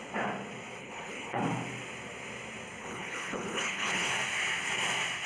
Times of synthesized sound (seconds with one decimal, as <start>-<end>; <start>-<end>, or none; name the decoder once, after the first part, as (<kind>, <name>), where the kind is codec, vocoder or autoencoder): 0.8-1.4 (codec, HILCodec); 2.8-4.1